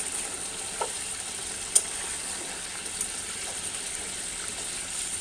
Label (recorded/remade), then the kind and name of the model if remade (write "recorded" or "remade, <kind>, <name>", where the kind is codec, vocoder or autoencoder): remade, vocoder, BigVGAN v2